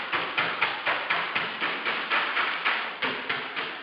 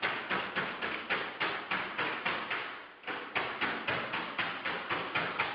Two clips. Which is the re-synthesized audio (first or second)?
first